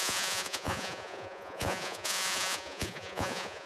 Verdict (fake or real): fake